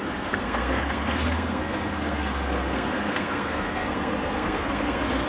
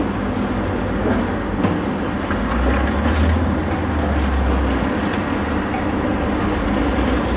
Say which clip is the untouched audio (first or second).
second